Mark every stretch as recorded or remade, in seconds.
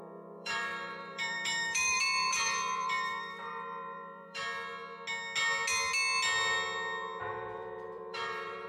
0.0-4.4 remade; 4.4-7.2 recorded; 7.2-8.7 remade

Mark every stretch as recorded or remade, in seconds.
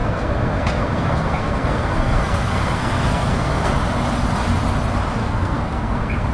0.0-3.7 remade; 3.7-5.2 recorded; 5.2-6.3 remade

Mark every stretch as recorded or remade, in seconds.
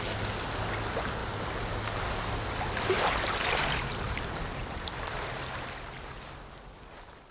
0.0-7.3 recorded